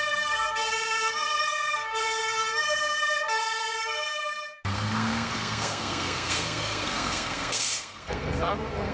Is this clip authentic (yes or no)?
no